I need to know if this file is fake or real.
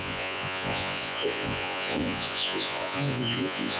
fake